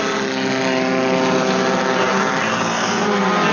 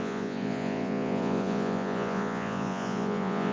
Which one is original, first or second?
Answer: first